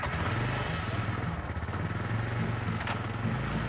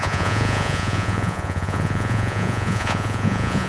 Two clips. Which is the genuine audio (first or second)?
first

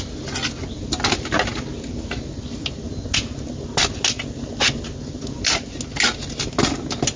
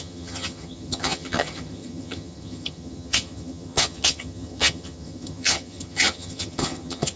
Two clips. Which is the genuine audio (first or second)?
first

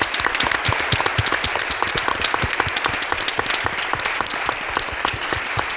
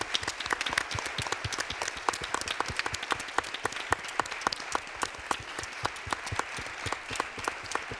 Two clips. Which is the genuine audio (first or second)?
second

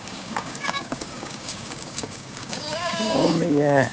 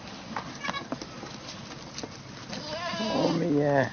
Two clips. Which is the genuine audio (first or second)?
second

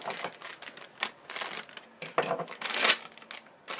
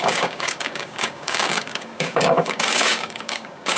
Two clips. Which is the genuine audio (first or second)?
first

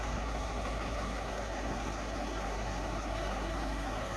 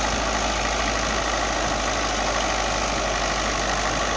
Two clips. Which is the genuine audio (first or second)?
second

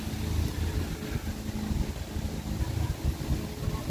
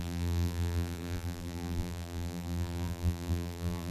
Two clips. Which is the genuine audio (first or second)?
first